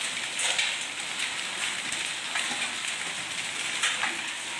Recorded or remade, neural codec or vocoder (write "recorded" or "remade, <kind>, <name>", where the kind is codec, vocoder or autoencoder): recorded